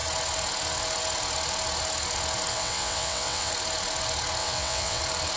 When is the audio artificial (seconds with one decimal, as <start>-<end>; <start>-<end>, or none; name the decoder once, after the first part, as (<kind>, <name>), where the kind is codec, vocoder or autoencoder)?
2.5-3.5 (vocoder, WaveNeXt); 4.4-5.0